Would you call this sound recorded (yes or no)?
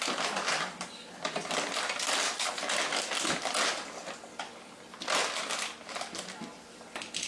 yes